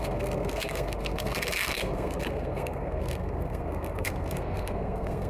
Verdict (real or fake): fake